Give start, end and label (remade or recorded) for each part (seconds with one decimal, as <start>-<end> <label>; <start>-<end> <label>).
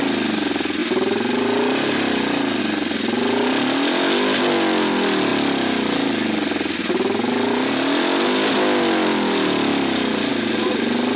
0.0-11.2 recorded